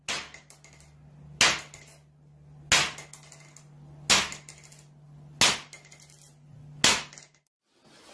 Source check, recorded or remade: recorded